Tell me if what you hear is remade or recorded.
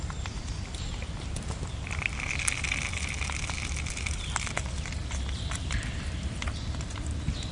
remade